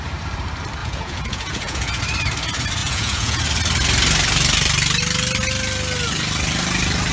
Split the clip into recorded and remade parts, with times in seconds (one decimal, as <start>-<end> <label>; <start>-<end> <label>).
0.0-0.8 recorded; 0.8-2.0 remade; 2.0-2.8 recorded; 2.8-3.4 remade; 3.4-7.1 recorded